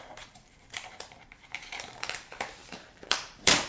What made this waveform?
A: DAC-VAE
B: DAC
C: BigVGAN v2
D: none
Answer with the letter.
C